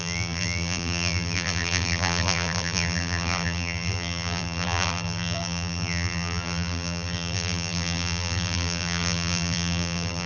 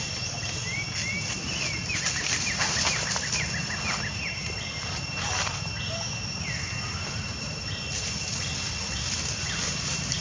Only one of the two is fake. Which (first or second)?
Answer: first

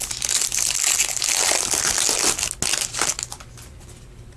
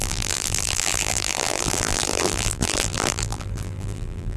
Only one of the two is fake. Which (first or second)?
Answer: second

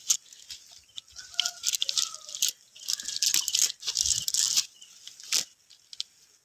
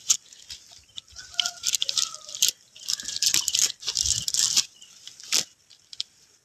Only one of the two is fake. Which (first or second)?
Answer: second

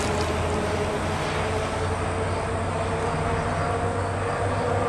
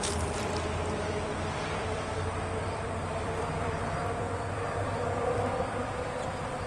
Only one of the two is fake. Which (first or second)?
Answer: second